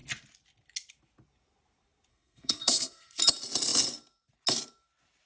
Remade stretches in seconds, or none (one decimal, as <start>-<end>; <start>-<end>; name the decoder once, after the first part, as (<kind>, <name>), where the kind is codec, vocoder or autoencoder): 2.1-3.2 (codec, SNAC)